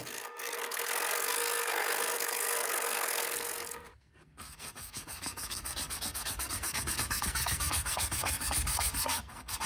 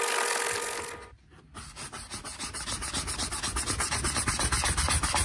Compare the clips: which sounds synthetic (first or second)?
first